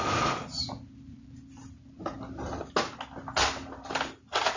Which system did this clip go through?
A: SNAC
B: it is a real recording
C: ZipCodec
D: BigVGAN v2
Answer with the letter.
B